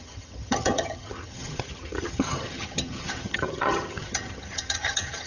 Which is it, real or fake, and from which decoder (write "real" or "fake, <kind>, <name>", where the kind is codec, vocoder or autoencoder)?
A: fake, vocoder, HiFi-GAN